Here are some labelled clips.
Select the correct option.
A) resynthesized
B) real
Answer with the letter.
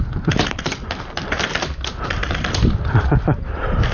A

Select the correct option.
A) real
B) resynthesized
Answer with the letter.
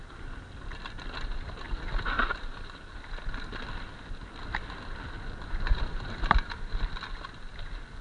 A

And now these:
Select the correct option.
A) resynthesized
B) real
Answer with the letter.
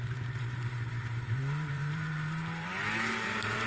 A